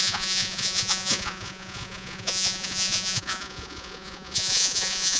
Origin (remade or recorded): remade